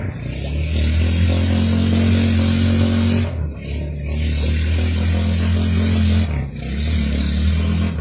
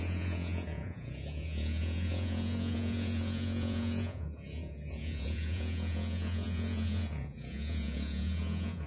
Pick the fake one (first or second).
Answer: second